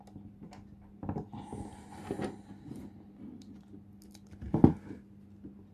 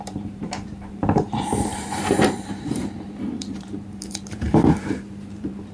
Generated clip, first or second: second